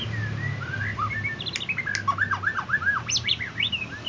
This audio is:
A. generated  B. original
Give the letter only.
B